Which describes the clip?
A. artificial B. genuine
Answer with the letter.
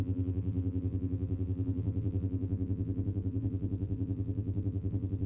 A